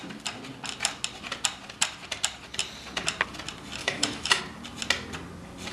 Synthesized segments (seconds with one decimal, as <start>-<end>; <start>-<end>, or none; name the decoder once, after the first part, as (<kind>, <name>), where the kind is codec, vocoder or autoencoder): 3.8-4.4 (autoencoder, DAC-VAE)